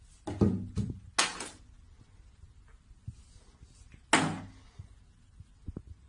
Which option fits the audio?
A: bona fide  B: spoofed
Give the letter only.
A